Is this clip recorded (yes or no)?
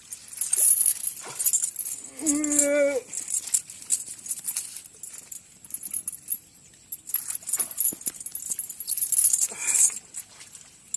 yes